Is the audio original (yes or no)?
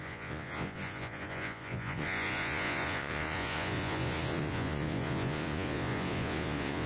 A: no